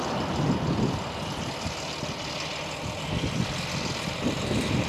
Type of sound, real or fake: real